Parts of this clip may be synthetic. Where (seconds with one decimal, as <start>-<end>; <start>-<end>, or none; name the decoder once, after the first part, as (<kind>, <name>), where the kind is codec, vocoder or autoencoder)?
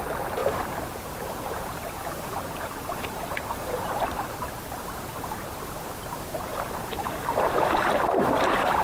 0.4-4.0 (vocoder, BigVGAN v2); 6.5-8.8